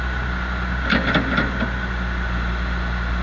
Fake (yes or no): no